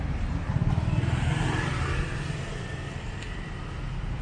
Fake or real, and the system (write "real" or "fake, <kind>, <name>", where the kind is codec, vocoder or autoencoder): real